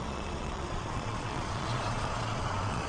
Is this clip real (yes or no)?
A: no